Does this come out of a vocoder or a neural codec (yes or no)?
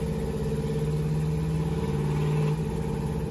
no